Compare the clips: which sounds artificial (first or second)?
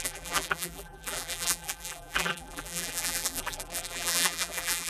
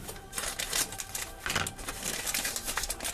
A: first